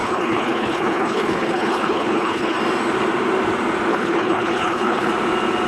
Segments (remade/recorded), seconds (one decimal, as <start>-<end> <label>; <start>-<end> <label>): 0.0-2.6 remade; 2.6-3.9 recorded; 3.9-5.1 remade; 5.1-5.7 recorded